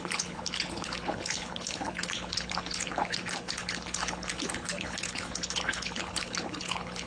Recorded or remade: remade